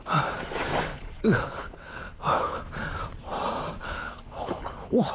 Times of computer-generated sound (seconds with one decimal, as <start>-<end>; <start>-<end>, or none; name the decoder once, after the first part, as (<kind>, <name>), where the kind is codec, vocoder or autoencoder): 0.9-2.6 (codec, HILCodec); 3.8-5.1